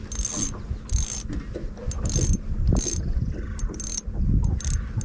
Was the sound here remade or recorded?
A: recorded